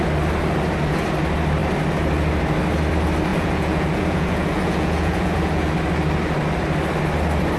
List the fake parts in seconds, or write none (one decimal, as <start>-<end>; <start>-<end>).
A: 3.3-5.7